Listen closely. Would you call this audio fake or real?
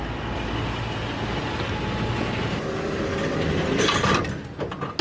real